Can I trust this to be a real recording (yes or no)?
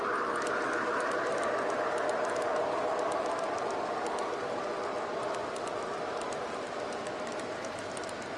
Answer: yes